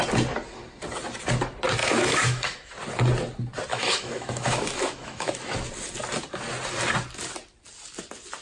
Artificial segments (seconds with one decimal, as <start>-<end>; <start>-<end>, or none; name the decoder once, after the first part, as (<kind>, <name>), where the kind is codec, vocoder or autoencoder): 1.8-2.7 (autoencoder, DAC-VAE); 3.7-5.3